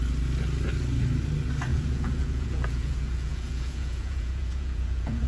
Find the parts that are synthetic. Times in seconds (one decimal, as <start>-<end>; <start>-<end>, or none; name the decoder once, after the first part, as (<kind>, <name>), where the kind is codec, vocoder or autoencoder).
1.7-5.3 (vocoder, Vocos)